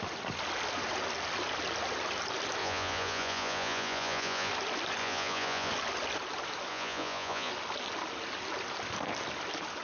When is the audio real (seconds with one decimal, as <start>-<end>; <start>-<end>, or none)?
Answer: 0.0-2.6; 4.5-5.0; 5.7-6.7; 7.5-9.8